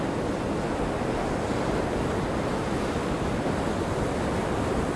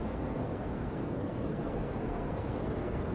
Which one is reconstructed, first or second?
second